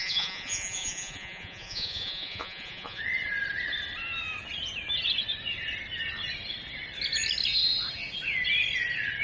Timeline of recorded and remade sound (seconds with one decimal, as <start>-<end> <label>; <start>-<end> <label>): 0.0-3.0 remade; 3.0-9.2 recorded